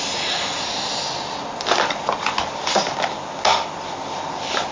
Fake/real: real